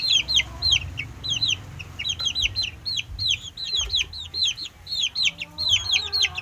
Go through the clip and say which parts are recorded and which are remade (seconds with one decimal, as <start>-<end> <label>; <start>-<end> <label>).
0.0-6.4 recorded